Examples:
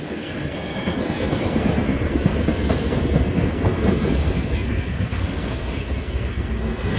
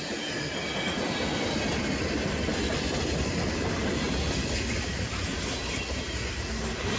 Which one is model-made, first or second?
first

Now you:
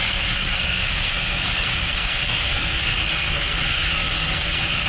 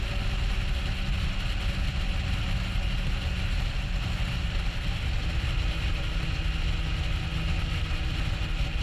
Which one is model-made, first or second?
first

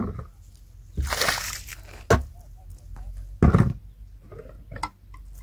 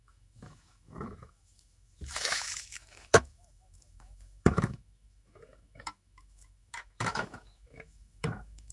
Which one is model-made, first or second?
second